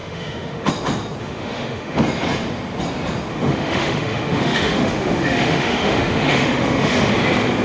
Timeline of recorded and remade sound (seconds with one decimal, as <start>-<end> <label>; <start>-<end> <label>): 0.0-0.7 remade; 0.7-1.2 recorded; 1.2-2.0 remade; 2.0-3.3 recorded; 3.3-7.1 remade; 7.1-7.6 recorded